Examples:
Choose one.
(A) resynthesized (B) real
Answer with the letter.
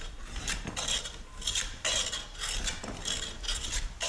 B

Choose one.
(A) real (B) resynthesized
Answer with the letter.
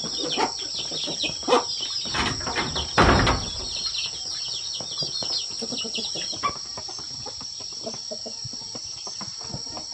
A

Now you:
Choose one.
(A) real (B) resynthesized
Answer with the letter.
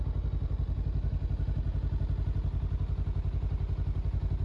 A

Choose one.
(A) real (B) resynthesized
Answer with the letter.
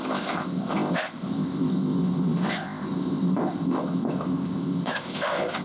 B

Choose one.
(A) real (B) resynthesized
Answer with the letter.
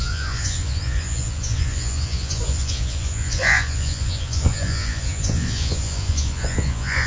B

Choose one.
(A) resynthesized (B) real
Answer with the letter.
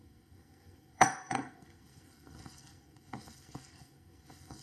A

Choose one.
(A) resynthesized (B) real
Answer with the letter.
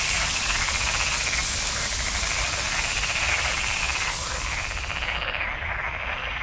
B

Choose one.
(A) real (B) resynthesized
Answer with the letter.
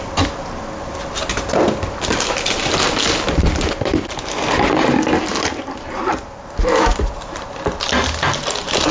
A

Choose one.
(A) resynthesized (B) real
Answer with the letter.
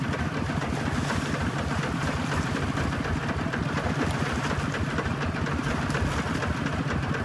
B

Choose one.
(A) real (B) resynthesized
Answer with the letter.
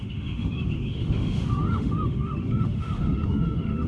B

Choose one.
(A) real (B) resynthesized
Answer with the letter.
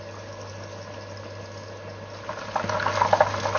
A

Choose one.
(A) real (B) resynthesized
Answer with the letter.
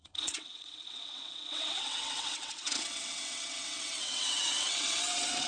B